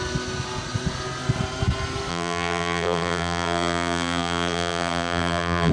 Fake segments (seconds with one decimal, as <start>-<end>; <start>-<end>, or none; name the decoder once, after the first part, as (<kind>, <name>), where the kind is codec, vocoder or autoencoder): 2.1-5.7 (vocoder, BigVGAN v2)